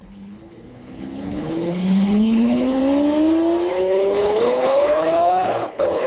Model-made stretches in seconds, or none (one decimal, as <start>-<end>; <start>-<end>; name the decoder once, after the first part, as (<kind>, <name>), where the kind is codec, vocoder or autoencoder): 0.0-2.8 (codec, HILCodec); 3.7-6.1